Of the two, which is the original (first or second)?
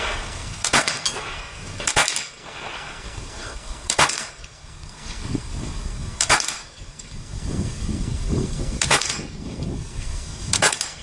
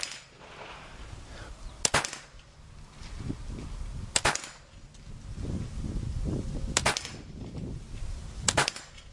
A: second